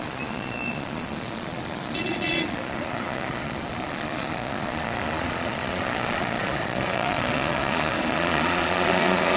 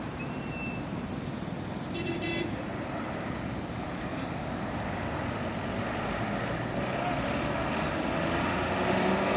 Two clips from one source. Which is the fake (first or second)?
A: first